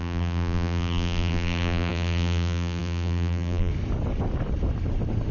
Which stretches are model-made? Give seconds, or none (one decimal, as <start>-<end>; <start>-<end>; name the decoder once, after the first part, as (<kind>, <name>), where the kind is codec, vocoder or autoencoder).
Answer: 0.0-3.7 (vocoder, BigVGAN v2)